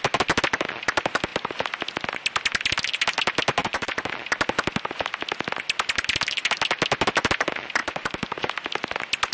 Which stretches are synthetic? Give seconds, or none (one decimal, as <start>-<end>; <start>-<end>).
3.6-4.1; 7.8-8.4

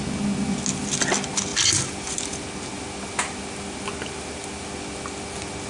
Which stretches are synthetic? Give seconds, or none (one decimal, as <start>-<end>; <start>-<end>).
none

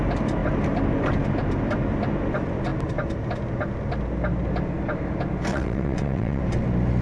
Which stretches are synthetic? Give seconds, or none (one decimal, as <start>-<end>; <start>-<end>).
5.5-6.4

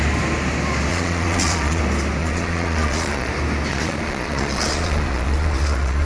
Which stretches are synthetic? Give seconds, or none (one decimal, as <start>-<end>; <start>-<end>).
0.9-1.8; 2.2-3.3; 3.7-6.1

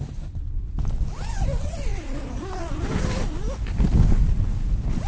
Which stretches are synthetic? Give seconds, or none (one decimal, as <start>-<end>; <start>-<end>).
none

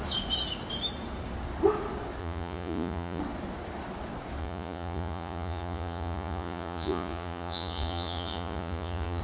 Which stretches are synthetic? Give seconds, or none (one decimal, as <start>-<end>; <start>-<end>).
2.2-3.2; 4.4-9.2